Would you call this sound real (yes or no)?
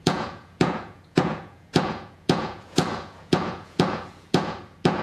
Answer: no